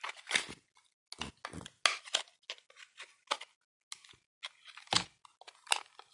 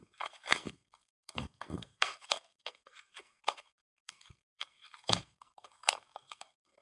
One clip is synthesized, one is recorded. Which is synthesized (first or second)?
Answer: second